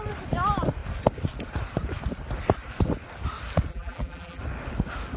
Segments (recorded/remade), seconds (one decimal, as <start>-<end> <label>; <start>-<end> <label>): 0.0-3.7 recorded; 3.7-4.4 remade; 4.4-5.2 recorded